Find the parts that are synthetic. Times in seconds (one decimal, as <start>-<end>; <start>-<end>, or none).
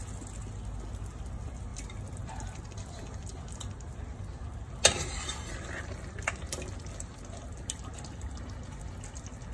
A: none